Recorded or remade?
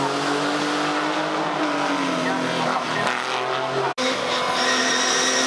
recorded